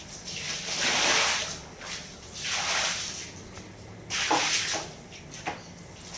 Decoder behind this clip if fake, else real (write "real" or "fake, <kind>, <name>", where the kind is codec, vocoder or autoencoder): real